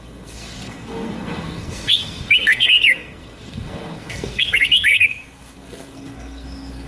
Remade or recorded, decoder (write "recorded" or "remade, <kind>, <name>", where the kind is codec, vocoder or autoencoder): remade, codec, SNAC